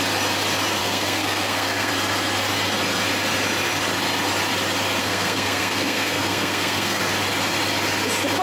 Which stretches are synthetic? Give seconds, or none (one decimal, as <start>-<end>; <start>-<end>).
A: 0.8-1.9; 5.0-7.0